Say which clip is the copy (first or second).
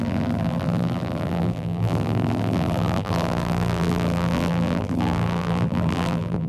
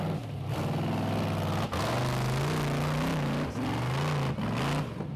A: first